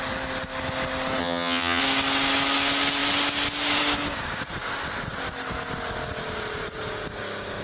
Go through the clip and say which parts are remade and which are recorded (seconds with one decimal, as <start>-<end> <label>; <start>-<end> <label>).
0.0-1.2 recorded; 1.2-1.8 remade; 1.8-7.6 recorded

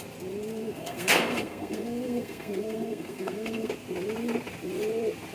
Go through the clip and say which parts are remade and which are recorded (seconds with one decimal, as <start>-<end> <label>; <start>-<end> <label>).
0.0-0.5 recorded; 0.5-3.7 remade; 3.7-5.3 recorded

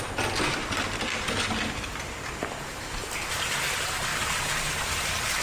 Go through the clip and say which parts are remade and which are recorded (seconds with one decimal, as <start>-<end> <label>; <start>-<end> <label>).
0.0-4.1 recorded; 4.1-4.7 remade; 4.7-5.4 recorded

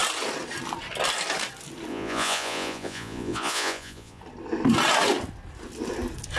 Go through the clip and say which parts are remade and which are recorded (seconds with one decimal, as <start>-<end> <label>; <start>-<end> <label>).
0.0-1.9 recorded; 1.9-4.2 remade; 4.2-6.4 recorded

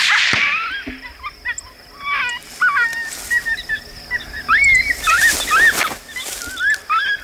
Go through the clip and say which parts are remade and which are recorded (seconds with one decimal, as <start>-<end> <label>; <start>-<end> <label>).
0.0-7.2 recorded

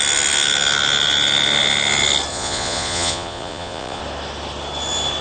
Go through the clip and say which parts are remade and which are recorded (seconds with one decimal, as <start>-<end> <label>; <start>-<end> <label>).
0.0-2.3 recorded; 2.3-4.0 remade; 4.0-5.2 recorded